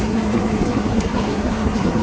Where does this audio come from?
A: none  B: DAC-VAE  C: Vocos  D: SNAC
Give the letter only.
D